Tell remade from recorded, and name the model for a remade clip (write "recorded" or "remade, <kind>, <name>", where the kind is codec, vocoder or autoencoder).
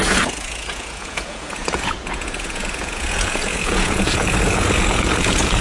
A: remade, vocoder, Vocos